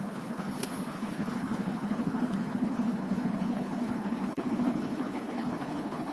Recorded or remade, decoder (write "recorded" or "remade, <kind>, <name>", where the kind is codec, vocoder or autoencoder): remade, codec, HILCodec